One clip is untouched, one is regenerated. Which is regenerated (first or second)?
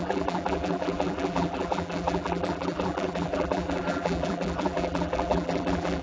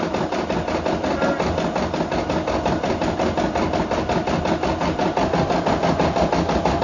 first